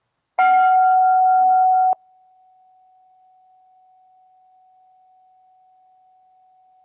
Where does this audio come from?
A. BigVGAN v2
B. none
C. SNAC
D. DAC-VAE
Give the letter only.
B